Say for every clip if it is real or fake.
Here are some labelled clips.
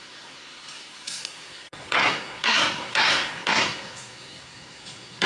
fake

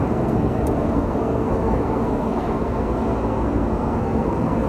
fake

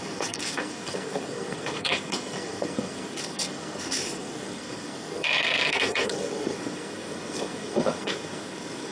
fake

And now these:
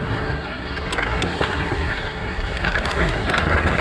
fake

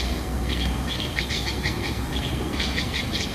fake